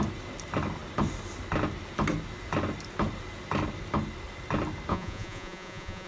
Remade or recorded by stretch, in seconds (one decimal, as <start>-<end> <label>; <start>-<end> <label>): 0.0-4.9 recorded; 4.9-6.1 remade